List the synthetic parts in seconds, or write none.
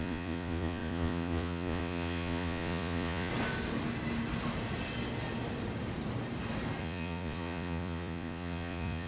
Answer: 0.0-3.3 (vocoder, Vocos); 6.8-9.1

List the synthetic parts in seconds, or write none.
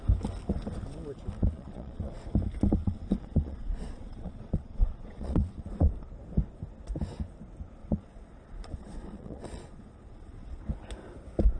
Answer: 1.4-2.1 (vocoder, Vocos); 2.8-5.9; 7.8-10.7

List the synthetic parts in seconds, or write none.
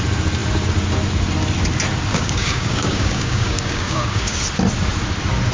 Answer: 2.1-4.4 (codec, DAC)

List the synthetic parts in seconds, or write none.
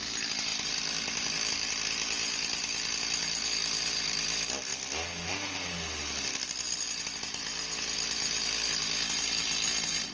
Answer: 0.5-1.5 (vocoder, BigVGAN v2)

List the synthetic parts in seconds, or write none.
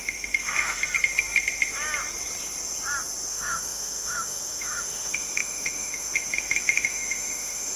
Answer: 0.0-0.8 (autoencoder, DAC-VAE); 3.3-7.8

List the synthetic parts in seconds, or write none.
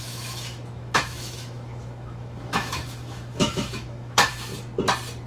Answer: 0.0-4.5 (autoencoder, DAC-VAE)